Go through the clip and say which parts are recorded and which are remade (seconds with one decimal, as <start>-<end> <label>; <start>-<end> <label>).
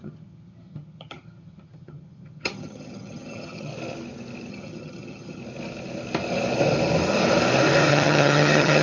0.0-3.7 remade; 3.7-4.5 recorded; 4.5-5.4 remade; 5.4-7.9 recorded; 7.9-8.8 remade